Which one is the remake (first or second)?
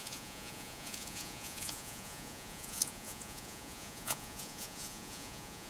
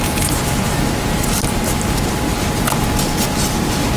first